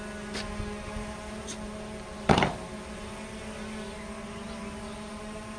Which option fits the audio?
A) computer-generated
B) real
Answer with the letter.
B